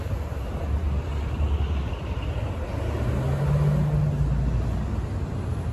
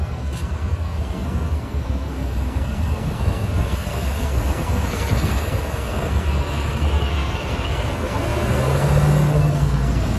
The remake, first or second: second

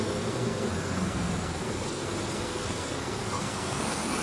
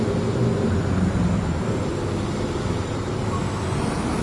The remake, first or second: first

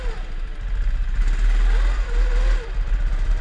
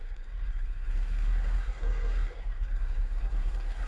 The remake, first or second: second